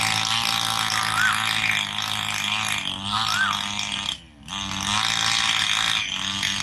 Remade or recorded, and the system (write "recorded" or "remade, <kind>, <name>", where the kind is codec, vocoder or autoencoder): recorded